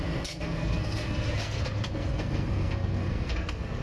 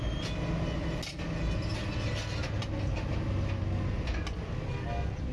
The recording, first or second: second